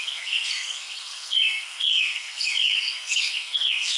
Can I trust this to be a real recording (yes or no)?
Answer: no